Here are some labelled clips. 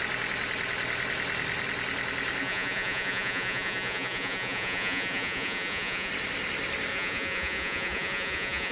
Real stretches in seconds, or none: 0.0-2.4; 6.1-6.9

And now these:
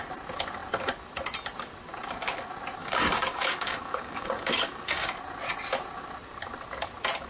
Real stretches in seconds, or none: 0.0-2.8; 5.1-7.3